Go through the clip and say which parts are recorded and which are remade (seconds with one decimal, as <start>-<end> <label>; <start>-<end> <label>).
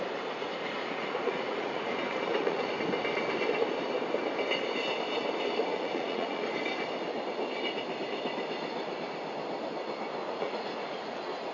0.0-0.8 recorded; 0.8-2.7 remade; 2.7-5.7 recorded; 5.7-6.4 remade; 6.4-10.2 recorded; 10.2-11.5 remade